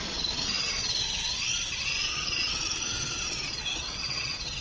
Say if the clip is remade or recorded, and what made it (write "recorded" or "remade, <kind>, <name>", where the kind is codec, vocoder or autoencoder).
remade, vocoder, Vocos